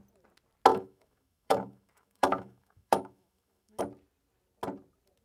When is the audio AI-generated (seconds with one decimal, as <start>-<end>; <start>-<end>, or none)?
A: 0.7-3.8